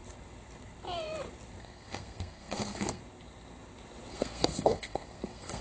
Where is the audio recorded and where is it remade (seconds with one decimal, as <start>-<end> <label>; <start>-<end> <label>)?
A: 0.0-1.6 recorded; 1.6-3.0 remade; 3.0-4.1 recorded; 4.1-5.6 remade